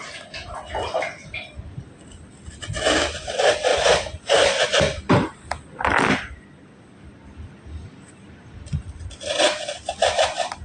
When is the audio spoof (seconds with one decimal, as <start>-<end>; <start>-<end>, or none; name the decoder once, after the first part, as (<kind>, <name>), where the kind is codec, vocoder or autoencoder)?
none